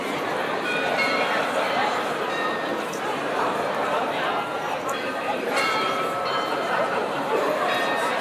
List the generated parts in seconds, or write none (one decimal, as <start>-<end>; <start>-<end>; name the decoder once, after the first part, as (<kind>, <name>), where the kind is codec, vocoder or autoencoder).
0.0-8.2 (vocoder, BigVGAN v2)